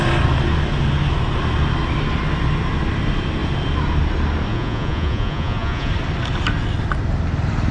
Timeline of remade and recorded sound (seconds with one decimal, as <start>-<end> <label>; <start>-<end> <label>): 0.0-4.5 recorded; 4.5-5.9 remade; 5.9-7.7 recorded